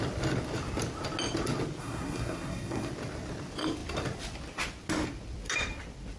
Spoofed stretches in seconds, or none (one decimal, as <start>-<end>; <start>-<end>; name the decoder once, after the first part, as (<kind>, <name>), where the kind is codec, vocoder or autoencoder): 1.8-2.9 (codec, SNAC)